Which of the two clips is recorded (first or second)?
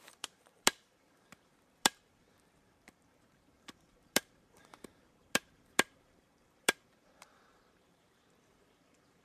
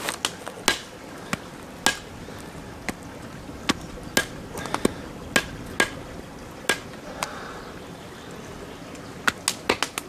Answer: second